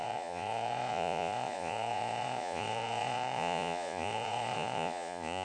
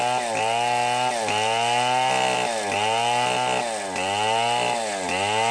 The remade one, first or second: first